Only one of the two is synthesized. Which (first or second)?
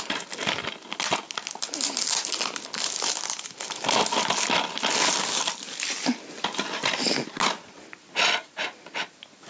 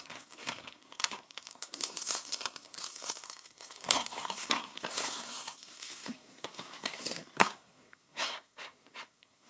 second